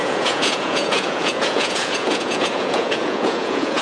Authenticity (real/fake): fake